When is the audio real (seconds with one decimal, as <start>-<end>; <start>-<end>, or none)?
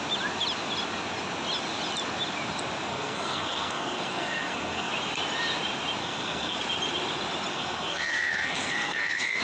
0.0-2.9; 4.9-6.0; 6.6-7.5